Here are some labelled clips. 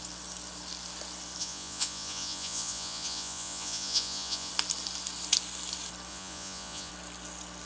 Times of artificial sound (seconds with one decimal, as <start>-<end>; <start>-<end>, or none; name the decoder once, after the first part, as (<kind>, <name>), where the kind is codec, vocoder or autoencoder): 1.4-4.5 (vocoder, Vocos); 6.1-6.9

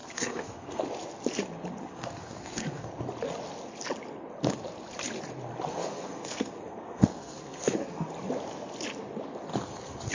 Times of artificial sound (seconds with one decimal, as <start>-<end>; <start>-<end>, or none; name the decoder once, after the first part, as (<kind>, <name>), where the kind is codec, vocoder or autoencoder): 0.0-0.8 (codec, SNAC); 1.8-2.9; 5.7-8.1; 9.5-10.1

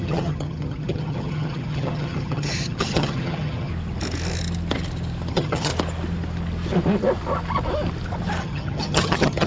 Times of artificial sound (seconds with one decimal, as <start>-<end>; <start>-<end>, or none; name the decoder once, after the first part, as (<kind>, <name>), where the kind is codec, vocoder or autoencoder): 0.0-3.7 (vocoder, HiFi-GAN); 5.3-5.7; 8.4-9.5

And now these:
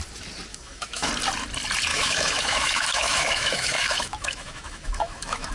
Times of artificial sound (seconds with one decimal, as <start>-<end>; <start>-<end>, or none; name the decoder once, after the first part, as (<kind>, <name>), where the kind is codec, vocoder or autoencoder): 0.5-1.1 (autoencoder, DAC-VAE); 1.9-5.5

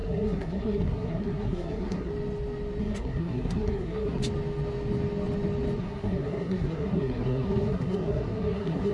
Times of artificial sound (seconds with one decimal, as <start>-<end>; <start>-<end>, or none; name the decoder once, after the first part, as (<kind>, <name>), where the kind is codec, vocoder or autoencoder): 0.0-2.1 (codec, SNAC); 2.8-4.2; 5.8-8.9